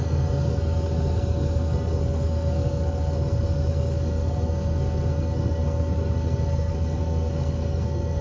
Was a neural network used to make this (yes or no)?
yes